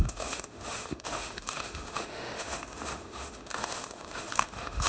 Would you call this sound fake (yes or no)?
yes